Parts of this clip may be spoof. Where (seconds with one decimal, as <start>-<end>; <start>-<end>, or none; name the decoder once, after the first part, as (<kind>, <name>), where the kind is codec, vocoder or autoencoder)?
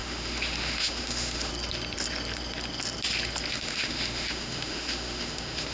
0.0-1.5 (autoencoder, DAC-VAE); 3.5-5.7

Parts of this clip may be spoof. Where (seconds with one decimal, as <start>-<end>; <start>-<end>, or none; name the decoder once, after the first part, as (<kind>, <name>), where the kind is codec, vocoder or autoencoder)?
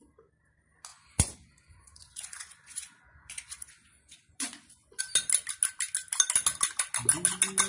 0.9-5.0 (vocoder, Vocos)